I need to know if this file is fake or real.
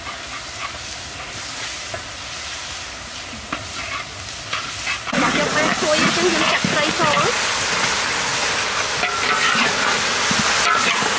real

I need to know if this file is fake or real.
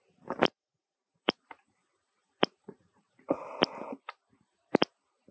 fake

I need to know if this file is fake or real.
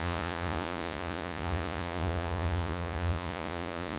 fake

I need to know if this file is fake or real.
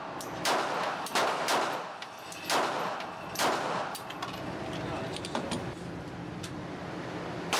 real